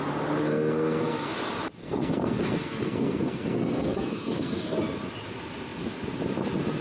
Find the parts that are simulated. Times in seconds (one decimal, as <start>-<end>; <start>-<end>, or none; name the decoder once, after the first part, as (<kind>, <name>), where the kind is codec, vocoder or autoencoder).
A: 0.5-1.3 (codec, SNAC); 1.8-4.8